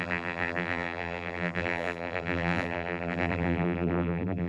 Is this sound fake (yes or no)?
yes